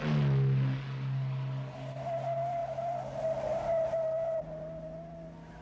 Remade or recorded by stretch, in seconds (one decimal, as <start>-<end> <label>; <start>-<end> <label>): 0.0-5.6 recorded